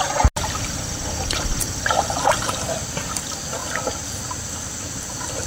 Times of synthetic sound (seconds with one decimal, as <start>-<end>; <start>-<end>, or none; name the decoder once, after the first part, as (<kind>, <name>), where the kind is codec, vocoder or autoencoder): none